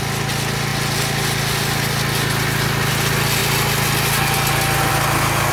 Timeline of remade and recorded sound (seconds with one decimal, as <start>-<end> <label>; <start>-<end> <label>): 0.0-5.5 recorded